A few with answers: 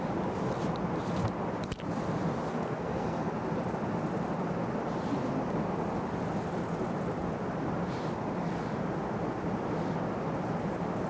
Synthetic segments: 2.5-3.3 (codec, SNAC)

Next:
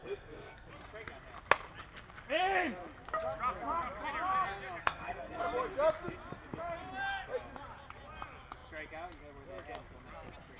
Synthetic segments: 0.0-0.7 (codec, SNAC); 4.8-5.4

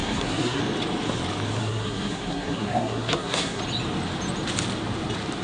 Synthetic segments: 0.0-0.6 (codec, SNAC); 1.6-3.6

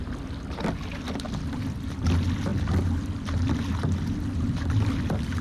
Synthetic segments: none

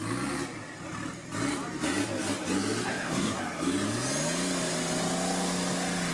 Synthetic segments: 2.9-3.4 (codec, SNAC)

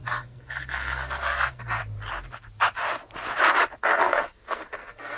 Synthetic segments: 0.0-1.8 (codec, SNAC); 3.8-5.2

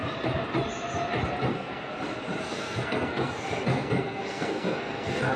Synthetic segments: 1.5-1.9 (codec, SNAC); 2.4-5.4

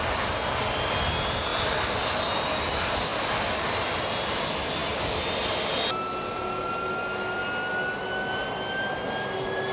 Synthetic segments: none